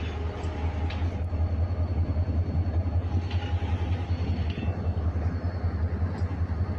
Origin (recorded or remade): recorded